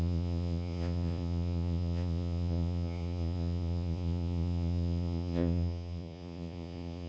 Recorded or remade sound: remade